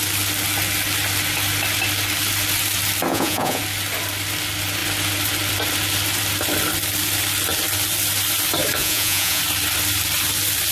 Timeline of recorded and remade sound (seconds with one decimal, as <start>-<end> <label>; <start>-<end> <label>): 0.0-3.1 recorded; 3.1-3.6 remade; 3.6-8.8 recorded; 8.8-9.4 remade; 9.4-10.7 recorded